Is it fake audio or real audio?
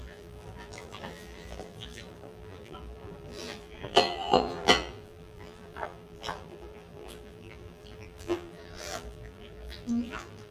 fake